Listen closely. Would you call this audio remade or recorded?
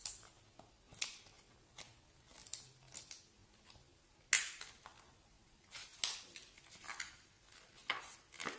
recorded